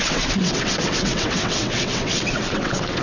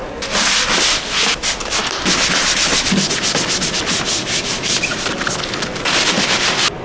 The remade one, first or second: first